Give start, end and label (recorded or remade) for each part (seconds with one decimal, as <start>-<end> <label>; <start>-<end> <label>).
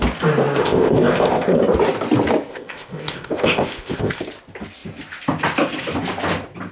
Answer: 0.0-0.6 recorded; 0.6-1.6 remade; 1.6-2.5 recorded; 2.5-4.2 remade; 4.2-6.7 recorded